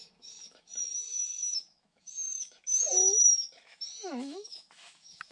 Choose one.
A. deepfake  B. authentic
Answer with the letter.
A